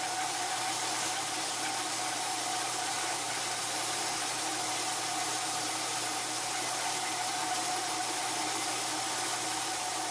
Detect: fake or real real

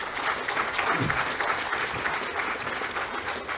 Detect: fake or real real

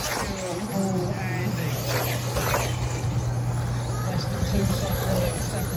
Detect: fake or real real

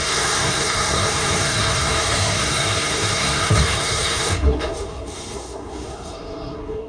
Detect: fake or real fake